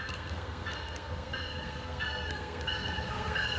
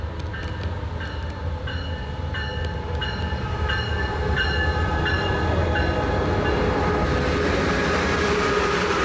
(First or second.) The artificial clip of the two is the first